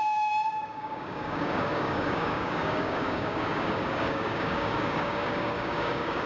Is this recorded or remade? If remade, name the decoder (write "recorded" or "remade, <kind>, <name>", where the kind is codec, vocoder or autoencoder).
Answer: remade, codec, DAC